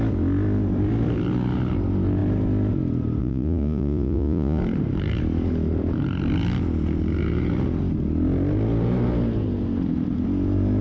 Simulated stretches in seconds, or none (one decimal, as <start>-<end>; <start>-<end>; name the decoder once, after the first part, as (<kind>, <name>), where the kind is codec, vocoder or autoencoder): 3.2-4.6 (vocoder, Vocos)

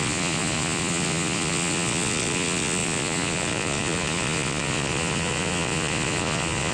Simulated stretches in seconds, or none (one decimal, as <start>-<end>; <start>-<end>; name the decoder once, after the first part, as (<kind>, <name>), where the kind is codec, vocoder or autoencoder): 0.0-6.7 (vocoder, Vocos)

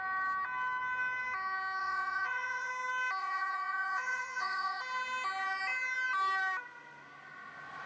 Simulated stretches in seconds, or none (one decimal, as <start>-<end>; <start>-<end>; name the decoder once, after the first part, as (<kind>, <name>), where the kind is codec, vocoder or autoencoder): 1.8-2.7 (vocoder, Vocos); 3.2-4.8

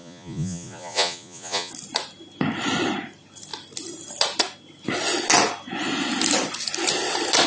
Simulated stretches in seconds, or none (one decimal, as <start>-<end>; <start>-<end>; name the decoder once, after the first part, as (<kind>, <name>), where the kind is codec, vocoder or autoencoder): 0.0-1.7 (vocoder, Vocos)

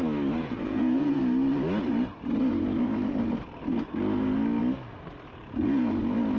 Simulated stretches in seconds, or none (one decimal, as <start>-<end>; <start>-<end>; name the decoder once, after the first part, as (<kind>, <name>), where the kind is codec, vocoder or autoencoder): 0.4-1.2 (vocoder, Vocos)